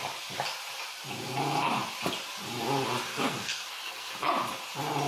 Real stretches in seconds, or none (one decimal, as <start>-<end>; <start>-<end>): 0.0-3.1; 4.1-5.1